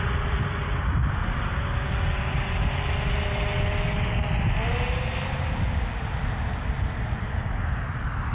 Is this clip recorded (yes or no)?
yes